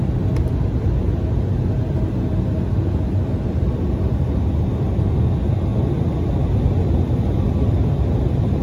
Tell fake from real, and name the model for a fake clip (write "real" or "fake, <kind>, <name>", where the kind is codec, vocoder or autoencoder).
real